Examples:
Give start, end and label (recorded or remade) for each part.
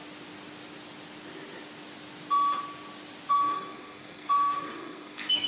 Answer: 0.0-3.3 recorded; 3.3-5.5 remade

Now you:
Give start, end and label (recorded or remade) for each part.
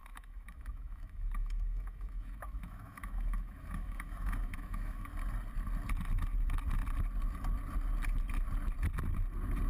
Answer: 0.0-5.1 remade; 5.1-9.7 recorded